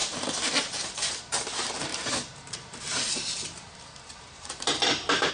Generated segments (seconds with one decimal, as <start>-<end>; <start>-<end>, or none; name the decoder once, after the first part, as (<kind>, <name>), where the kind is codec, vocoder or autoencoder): 0.0-1.1 (vocoder, BigVGAN v2); 1.9-5.3